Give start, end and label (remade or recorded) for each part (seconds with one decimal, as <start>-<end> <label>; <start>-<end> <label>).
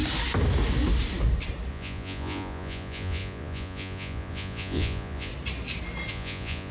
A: 0.0-1.7 recorded; 1.7-5.3 remade; 5.3-6.1 recorded; 6.1-6.7 remade